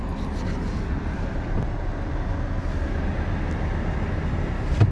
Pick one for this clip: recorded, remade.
recorded